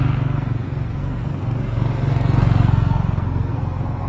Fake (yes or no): yes